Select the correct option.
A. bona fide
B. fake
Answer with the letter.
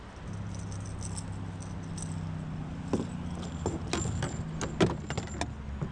A